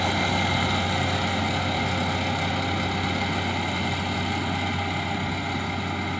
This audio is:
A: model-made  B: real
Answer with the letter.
B